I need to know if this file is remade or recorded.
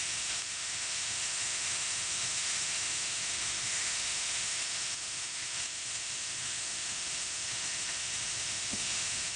remade